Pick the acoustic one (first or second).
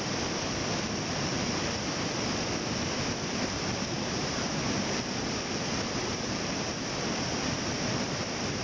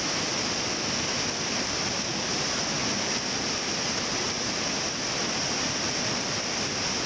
second